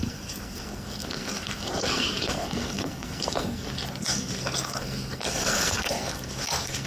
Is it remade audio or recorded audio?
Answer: remade